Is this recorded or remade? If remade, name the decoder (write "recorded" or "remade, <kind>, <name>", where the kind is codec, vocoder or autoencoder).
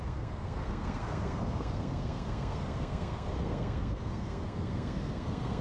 remade, codec, SNAC